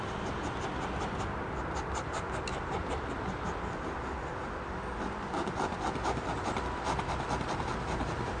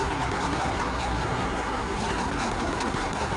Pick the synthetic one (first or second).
second